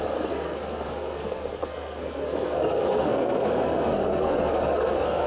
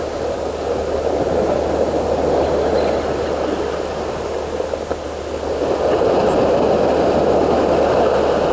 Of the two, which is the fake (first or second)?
first